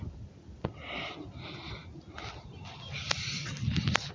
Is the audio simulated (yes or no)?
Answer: no